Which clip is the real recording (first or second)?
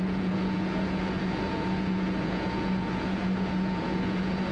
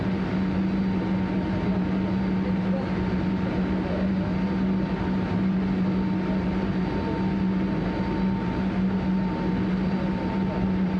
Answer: second